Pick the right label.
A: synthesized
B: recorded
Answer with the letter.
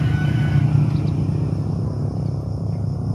B